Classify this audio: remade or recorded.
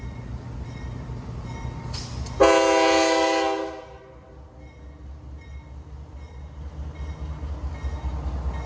recorded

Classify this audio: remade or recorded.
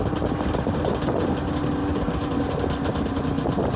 recorded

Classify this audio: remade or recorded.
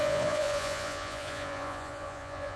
remade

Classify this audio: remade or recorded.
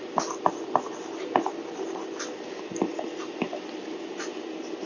recorded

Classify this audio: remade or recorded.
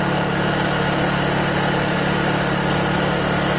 recorded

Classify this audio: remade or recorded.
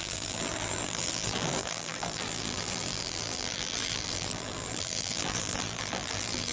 remade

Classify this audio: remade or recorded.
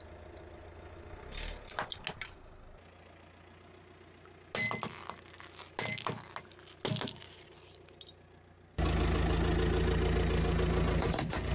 recorded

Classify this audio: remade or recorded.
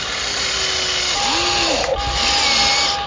recorded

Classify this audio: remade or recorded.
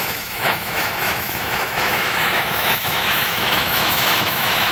remade